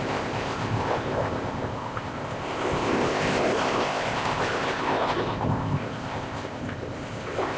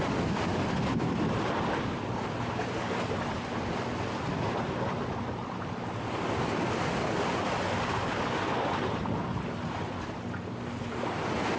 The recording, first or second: second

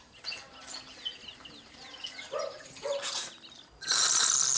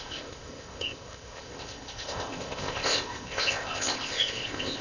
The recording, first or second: first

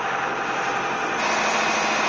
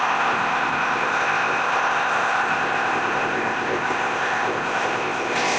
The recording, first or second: first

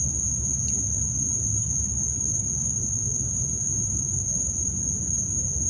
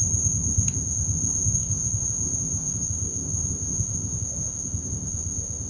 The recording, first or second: first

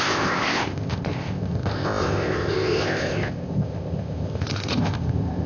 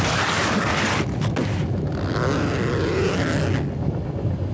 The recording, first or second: second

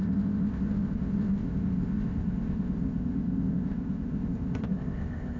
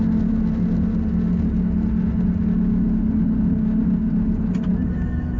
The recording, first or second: second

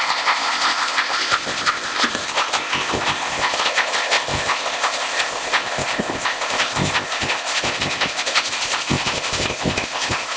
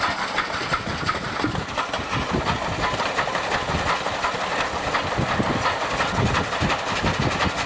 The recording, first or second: second